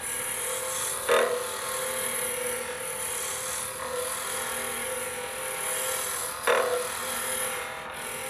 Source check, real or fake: real